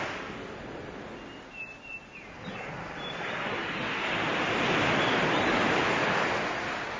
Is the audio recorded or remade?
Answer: recorded